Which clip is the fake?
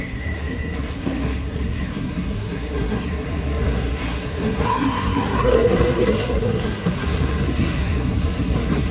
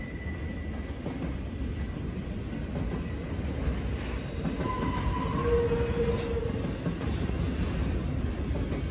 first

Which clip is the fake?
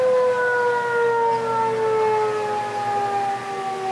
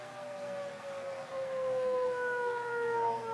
second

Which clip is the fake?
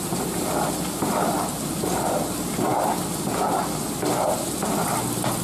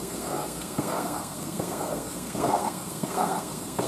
second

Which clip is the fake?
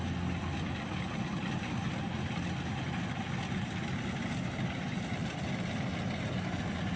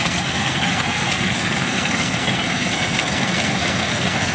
second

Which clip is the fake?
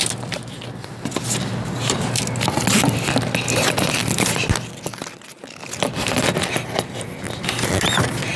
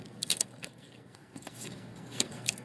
second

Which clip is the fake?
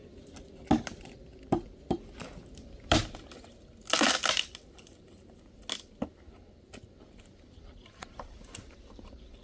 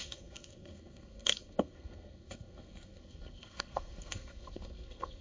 second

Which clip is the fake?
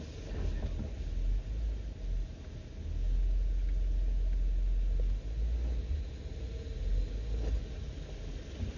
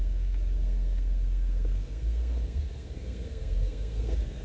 second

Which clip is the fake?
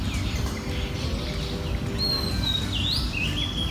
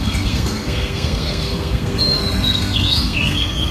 second